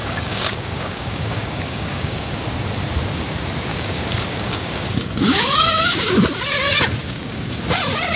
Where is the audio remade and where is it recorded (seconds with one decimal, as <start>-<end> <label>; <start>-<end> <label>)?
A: 0.0-2.4 remade; 2.4-3.7 recorded; 3.7-6.1 remade; 6.1-7.0 recorded; 7.0-7.6 remade; 7.6-8.2 recorded